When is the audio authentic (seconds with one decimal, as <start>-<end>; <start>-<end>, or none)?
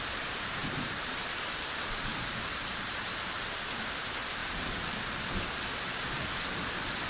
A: 0.0-2.1; 3.4-7.1